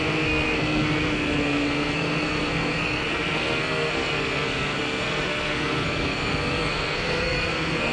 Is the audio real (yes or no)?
no